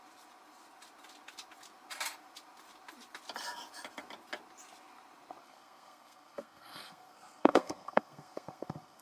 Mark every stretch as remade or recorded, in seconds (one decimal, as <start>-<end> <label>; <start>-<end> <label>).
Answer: 0.0-5.4 recorded; 5.4-9.0 remade